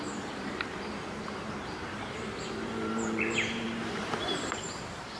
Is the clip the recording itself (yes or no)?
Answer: no